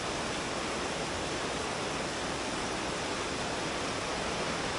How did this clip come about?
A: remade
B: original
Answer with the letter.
A